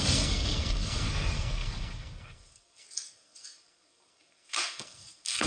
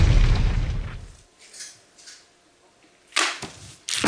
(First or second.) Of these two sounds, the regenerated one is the first